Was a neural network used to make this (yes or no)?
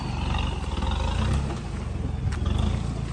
no